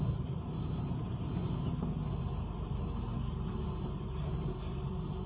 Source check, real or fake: real